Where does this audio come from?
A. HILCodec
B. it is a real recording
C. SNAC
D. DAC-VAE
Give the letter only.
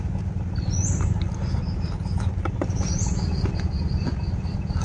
B